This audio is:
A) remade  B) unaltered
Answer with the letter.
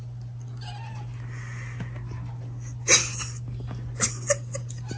B